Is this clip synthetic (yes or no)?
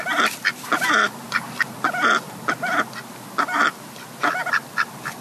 no